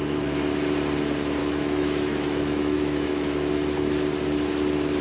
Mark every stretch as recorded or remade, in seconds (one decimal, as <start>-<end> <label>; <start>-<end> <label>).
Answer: 0.0-1.4 recorded; 1.4-3.5 remade; 3.5-5.0 recorded